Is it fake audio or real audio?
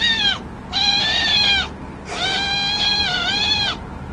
real